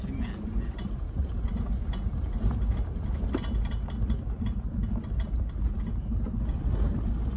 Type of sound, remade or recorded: recorded